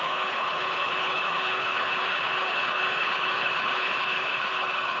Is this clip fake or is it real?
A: fake